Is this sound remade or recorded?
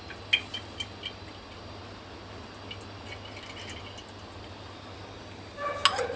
recorded